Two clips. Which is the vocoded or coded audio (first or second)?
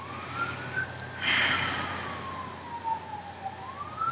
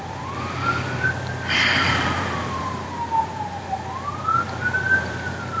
second